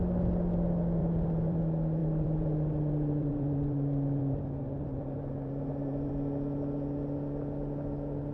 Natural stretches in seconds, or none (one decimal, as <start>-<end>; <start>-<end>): 0.0-1.0; 1.6-2.0; 6.1-8.3